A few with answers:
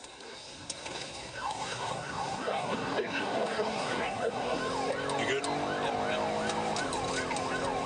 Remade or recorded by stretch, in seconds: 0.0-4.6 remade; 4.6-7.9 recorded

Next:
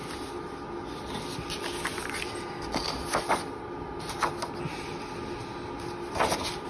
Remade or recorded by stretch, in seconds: 0.0-6.7 recorded

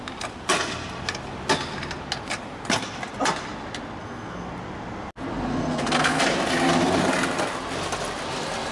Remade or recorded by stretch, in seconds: 0.0-4.0 recorded; 4.0-4.5 remade; 4.5-5.5 recorded; 5.5-6.2 remade; 6.2-8.7 recorded

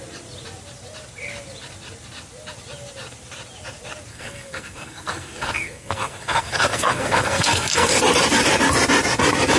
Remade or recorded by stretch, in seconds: 0.0-4.1 recorded; 4.1-8.0 remade; 8.0-9.6 recorded

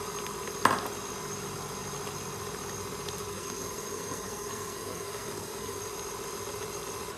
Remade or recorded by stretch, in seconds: 0.0-3.3 recorded; 3.3-5.8 remade; 5.8-7.2 recorded

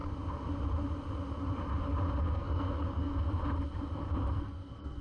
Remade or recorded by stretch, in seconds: 0.0-2.2 recorded; 2.2-3.1 remade; 3.1-4.3 recorded; 4.3-5.0 remade

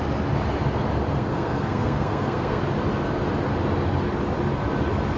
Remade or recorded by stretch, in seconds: 0.0-1.1 recorded; 1.1-2.6 remade; 2.6-5.2 recorded